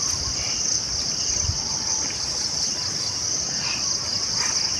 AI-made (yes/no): no